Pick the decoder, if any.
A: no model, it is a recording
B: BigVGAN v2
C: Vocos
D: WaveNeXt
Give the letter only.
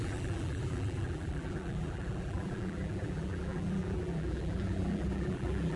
B